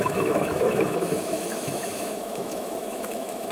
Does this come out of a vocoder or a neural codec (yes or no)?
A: yes